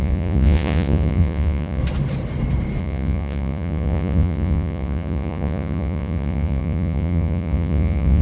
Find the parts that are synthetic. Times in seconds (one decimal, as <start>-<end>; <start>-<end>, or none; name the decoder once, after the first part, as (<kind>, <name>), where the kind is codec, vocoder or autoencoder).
0.0-1.8 (vocoder, Vocos); 2.8-8.2